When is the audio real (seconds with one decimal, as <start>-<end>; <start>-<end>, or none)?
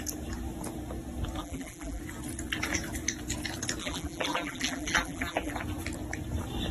0.0-1.4; 2.0-3.8; 5.5-6.7